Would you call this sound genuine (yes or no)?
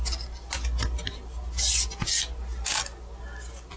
yes